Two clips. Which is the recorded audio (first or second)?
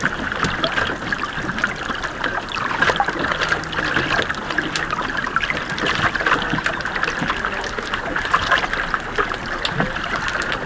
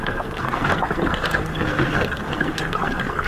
first